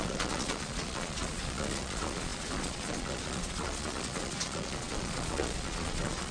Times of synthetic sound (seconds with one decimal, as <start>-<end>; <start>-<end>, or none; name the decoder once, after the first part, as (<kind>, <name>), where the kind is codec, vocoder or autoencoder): 0.0-6.3 (vocoder, Vocos)